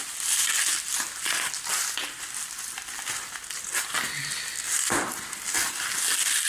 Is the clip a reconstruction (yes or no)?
yes